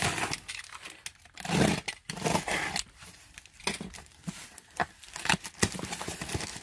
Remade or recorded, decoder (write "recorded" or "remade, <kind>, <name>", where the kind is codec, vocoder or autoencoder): recorded